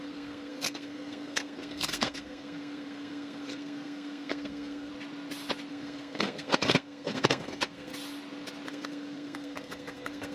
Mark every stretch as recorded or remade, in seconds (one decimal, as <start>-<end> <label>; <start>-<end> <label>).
0.0-4.9 remade; 4.9-5.7 recorded; 5.7-7.9 remade; 7.9-8.7 recorded; 8.7-10.3 remade